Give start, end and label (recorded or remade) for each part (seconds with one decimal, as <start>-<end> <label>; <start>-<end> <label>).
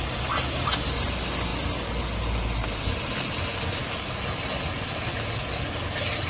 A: 0.0-6.3 recorded